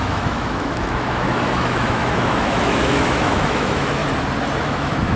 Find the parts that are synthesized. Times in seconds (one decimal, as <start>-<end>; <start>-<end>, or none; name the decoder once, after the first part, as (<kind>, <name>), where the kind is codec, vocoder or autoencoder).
0.0-4.0 (autoencoder, DAC-VAE); 4.6-5.2